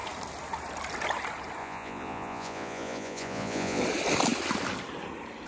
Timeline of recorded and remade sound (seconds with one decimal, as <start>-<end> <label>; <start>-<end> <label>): 0.0-1.6 recorded; 1.6-3.8 remade; 3.8-5.5 recorded